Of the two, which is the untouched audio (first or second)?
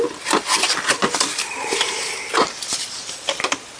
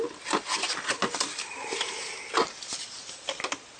second